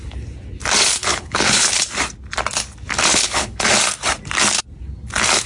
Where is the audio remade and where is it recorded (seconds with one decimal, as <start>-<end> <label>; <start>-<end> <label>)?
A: 0.0-1.0 recorded; 1.0-1.8 remade; 1.8-3.1 recorded; 3.1-3.7 remade; 3.7-5.5 recorded